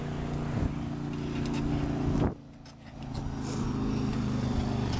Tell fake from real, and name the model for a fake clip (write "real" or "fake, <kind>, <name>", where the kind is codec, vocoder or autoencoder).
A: real